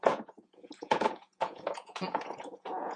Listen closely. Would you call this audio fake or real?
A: fake